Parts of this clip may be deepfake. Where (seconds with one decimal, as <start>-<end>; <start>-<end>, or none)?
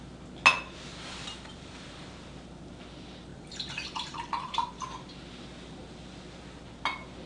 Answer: 0.9-2.1; 3.3-4.7